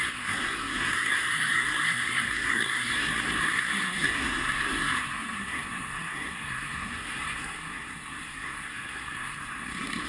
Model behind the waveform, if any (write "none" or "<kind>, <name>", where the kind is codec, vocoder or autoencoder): codec, SNAC